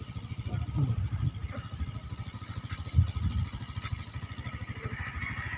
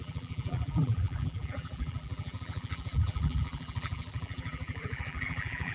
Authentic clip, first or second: first